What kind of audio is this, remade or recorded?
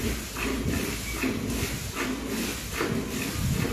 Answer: recorded